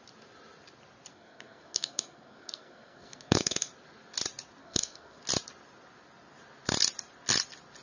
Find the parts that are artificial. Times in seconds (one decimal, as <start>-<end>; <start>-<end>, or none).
1.1-3.7; 4.6-5.2